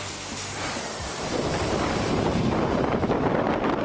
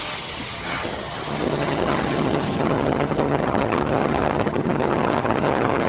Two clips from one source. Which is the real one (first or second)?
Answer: first